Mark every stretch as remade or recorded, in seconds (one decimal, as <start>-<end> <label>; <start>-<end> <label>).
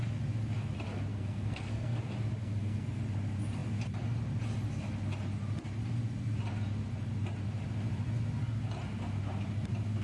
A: 0.0-1.1 recorded; 1.1-2.0 remade; 2.0-2.4 recorded; 2.4-3.0 remade; 3.0-10.0 recorded